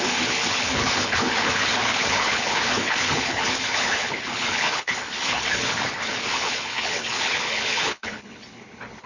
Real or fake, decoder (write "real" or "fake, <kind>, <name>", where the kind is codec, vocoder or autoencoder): fake, codec, HILCodec